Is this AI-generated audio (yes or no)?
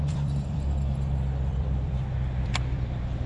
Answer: yes